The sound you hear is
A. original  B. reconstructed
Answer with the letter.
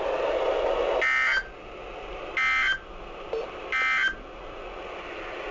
A